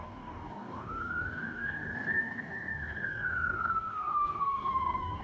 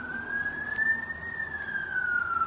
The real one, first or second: second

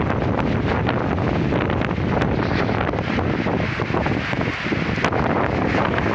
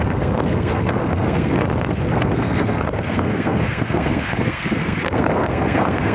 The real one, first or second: first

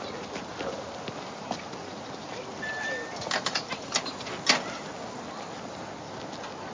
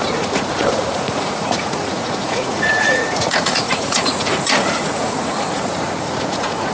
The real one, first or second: first